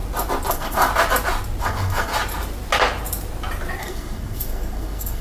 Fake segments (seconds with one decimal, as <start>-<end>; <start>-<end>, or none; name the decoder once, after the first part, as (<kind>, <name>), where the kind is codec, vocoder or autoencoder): 0.5-0.9 (codec, SNAC); 1.6-2.1; 3.8-5.2

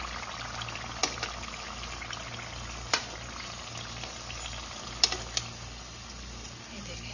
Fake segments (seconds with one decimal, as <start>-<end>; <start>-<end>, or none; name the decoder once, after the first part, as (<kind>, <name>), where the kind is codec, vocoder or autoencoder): none

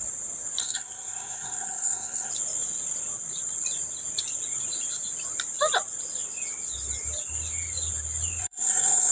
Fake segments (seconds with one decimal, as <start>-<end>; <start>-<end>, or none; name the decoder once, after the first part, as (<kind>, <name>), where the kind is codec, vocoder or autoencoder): 0.6-2.3 (codec, SNAC); 8.4-9.1

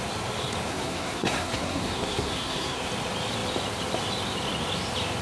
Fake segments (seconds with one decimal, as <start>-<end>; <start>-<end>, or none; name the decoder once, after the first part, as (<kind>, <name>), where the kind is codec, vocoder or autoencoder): 0.7-2.8 (codec, SNAC)

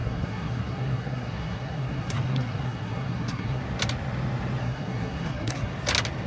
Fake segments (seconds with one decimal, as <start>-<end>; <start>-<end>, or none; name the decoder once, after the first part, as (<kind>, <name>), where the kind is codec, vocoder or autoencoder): 0.0-3.6 (codec, SNAC); 4.6-5.7